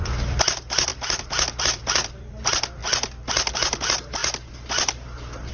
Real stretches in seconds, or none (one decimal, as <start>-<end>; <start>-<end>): 0.9-1.6; 2.8-3.8; 4.2-5.5